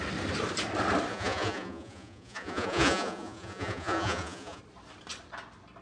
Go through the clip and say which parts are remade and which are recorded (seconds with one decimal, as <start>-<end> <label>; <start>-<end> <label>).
0.0-1.1 recorded; 1.1-4.6 remade; 4.6-5.8 recorded